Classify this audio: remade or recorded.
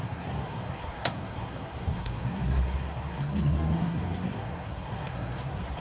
remade